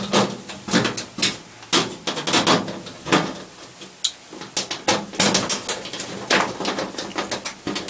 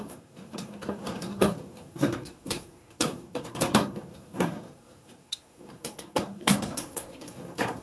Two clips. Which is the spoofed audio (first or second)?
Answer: second